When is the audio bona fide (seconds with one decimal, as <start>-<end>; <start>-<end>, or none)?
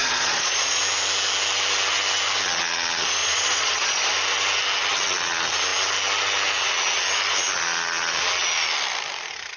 0.8-3.2; 4.1-9.6